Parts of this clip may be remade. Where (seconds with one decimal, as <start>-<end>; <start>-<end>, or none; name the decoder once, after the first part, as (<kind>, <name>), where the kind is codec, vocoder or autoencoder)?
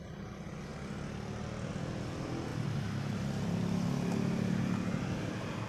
none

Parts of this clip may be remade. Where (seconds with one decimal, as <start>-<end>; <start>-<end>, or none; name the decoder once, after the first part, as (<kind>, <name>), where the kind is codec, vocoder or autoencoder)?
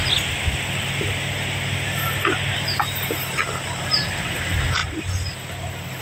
none